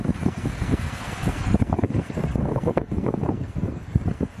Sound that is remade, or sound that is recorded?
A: remade